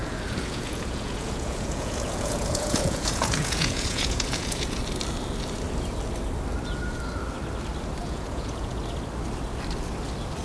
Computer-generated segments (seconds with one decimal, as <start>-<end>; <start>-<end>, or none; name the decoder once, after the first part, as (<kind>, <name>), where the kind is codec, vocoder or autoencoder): 0.0-4.8 (vocoder, Vocos); 8.0-8.8